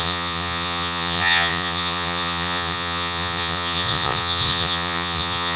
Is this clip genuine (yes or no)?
no